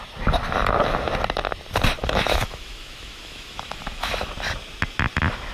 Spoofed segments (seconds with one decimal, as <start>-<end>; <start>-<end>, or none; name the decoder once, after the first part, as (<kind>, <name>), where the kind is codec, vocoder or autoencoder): 2.0-4.3 (autoencoder, DAC-VAE)